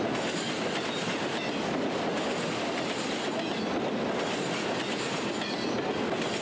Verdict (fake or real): real